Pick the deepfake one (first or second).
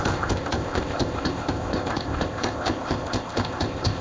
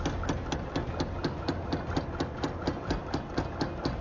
first